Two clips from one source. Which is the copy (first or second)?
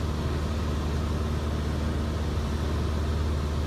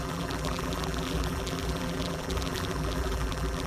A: second